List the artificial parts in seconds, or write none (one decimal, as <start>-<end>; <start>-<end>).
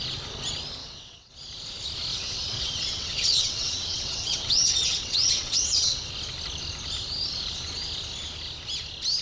0.8-1.3; 2.1-6.1